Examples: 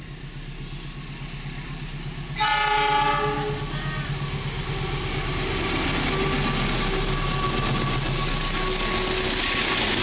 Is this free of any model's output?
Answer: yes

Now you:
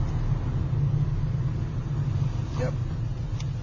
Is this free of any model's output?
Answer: yes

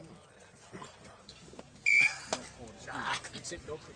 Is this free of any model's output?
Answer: yes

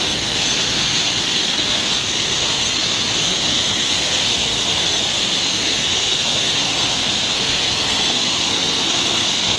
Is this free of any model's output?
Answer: no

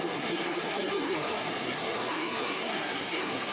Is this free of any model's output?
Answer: no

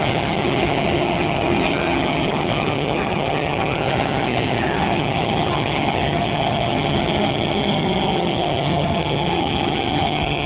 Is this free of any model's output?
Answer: no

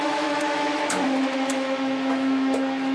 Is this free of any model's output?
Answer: no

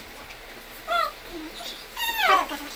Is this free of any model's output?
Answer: yes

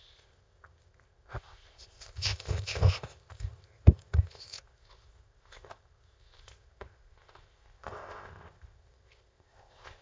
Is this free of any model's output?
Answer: no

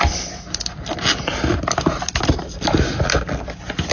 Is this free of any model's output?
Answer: yes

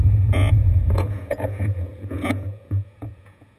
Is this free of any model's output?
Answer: no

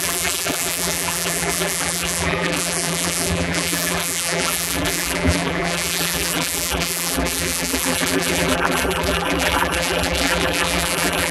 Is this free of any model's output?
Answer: no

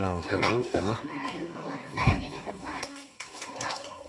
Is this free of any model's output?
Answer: no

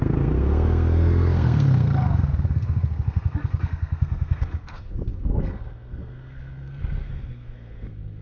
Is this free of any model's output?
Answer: no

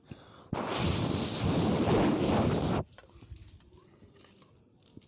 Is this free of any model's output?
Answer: yes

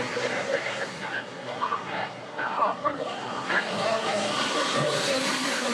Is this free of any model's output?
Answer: no